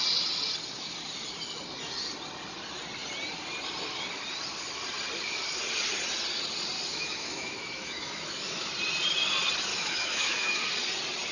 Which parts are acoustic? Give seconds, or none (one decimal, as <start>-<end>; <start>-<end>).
0.0-6.9; 8.7-9.7; 10.6-11.3